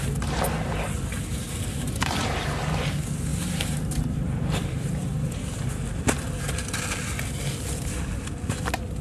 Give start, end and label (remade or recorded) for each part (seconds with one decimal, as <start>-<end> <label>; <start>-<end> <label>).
0.0-1.3 recorded; 1.3-2.2 remade; 2.2-3.3 recorded; 3.3-5.0 remade; 5.0-9.0 recorded

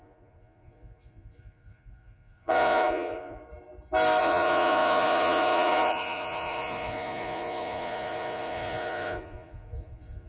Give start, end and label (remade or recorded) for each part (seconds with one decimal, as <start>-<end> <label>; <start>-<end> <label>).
0.0-3.4 remade; 3.4-4.2 recorded; 4.2-10.3 remade

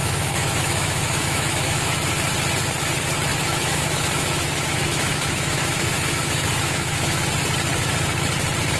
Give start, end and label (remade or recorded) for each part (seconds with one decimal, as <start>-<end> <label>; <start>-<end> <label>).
0.0-2.1 remade; 2.1-3.3 recorded; 3.3-7.2 remade; 7.2-8.8 recorded

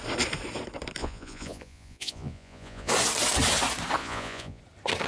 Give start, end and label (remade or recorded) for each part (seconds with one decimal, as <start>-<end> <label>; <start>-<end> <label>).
0.0-1.0 recorded; 1.0-2.9 remade; 2.9-4.0 recorded; 4.0-4.6 remade; 4.6-5.1 recorded

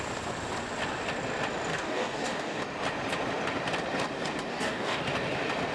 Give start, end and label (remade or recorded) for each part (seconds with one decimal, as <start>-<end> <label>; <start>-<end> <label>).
0.0-1.7 recorded; 1.7-2.6 remade; 2.6-4.5 recorded; 4.5-5.0 remade; 5.0-5.7 recorded

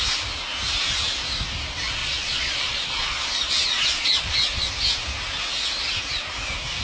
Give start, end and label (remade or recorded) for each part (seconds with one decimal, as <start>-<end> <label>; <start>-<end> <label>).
0.0-2.0 recorded; 2.0-4.7 remade; 4.7-6.8 recorded

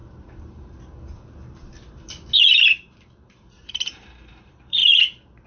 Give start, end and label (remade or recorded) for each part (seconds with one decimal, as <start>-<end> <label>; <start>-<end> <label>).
0.0-3.0 recorded; 3.0-4.8 remade; 4.8-5.5 recorded